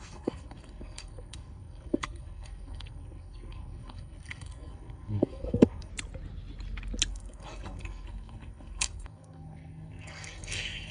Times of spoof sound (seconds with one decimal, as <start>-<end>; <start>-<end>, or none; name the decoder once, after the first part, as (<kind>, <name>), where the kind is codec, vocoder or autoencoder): 0.0-5.9 (codec, SNAC); 7.1-10.9